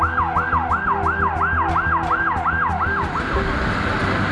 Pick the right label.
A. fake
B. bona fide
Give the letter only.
B